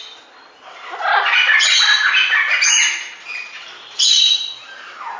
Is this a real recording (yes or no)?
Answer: yes